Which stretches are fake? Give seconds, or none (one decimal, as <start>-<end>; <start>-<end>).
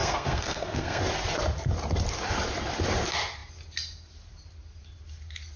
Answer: 0.0-1.0